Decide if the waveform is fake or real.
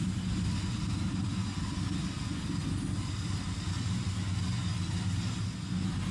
real